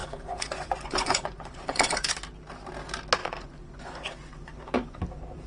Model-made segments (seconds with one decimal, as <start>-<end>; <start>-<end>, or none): 0.0-2.1; 3.2-5.0